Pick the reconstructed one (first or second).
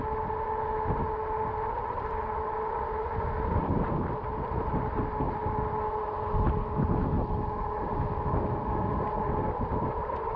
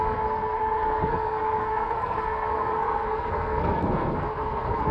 second